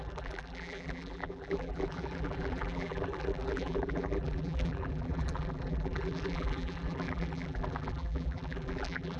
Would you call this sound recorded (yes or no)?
no